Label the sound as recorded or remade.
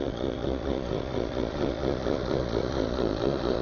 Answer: remade